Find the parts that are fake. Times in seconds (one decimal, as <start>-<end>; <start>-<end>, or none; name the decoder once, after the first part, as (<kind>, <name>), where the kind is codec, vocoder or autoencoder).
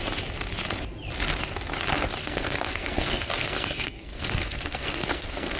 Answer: 2.2-5.6 (codec, SNAC)